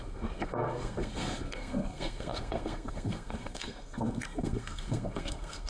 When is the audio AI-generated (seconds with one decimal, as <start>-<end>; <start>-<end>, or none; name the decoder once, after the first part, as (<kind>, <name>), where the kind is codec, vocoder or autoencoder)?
0.0-5.7 (codec, SNAC)